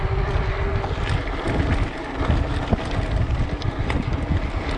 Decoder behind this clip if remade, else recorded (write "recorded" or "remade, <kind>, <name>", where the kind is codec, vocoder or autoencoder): recorded